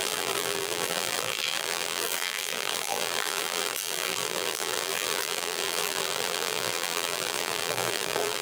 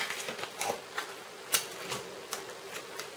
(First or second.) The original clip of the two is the second